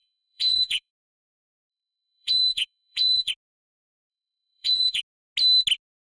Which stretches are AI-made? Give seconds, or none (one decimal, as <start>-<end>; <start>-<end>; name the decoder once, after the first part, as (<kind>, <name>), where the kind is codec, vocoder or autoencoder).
0.0-0.9 (vocoder, Vocos); 1.7-3.3; 4.1-5.0